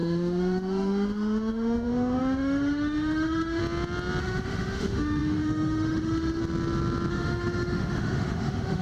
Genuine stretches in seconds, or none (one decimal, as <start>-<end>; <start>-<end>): 3.6-4.2; 6.4-7.1